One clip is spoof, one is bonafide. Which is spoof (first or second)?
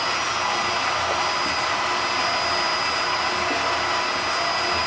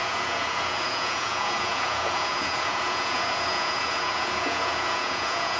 second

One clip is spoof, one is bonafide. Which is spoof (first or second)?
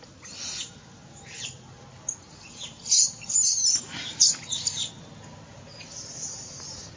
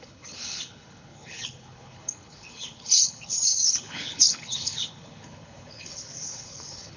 second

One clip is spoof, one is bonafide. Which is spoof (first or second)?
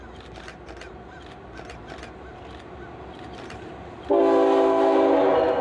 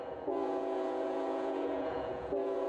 second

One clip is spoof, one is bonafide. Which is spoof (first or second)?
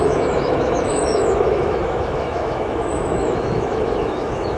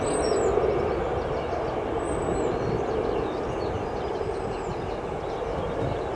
first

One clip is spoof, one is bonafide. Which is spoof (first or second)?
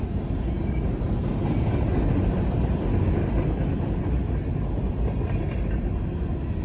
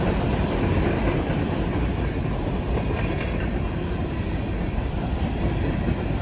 second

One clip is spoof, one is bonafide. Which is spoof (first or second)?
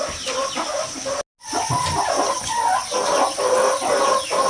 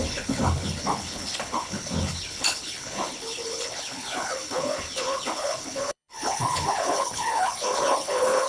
second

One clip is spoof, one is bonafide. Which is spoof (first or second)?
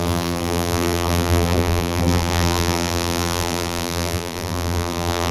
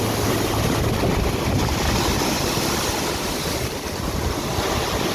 first